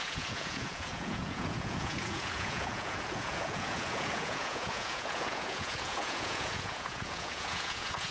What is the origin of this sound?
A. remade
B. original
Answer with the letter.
A